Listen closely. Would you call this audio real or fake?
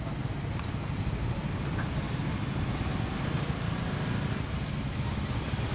real